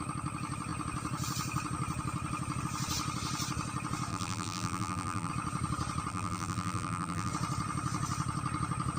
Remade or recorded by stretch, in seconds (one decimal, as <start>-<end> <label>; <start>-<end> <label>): 0.0-4.1 recorded; 4.1-5.3 remade; 5.3-6.1 recorded; 6.1-7.3 remade; 7.3-9.0 recorded